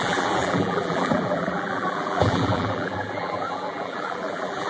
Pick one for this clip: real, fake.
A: fake